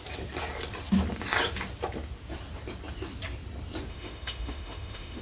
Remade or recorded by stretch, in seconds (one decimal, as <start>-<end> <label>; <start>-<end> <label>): 0.0-3.9 recorded; 3.9-5.2 remade